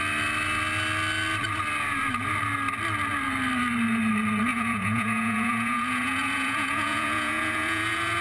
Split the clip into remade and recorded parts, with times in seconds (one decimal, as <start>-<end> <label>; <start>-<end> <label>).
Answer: 0.0-4.5 recorded; 4.5-8.2 remade